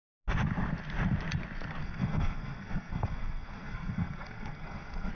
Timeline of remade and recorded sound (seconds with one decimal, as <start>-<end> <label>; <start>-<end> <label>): 0.0-1.8 recorded; 1.8-5.1 remade